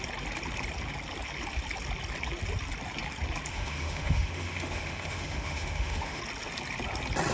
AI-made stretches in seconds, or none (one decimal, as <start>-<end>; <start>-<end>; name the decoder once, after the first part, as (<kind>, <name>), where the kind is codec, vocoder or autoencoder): 3.5-6.2 (autoencoder, DAC-VAE)